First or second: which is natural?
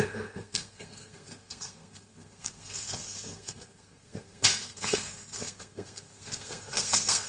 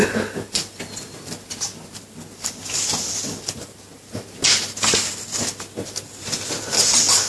second